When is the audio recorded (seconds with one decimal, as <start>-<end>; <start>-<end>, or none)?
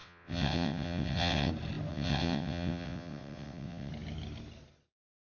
1.5-1.9; 3.9-5.3